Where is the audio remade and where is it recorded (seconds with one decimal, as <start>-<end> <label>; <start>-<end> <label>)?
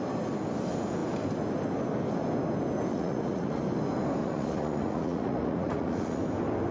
0.0-2.9 recorded; 2.9-3.6 remade; 3.6-4.2 recorded; 4.2-6.2 remade; 6.2-6.7 recorded